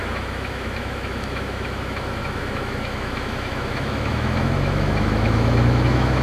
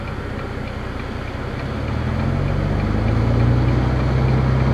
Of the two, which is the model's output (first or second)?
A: first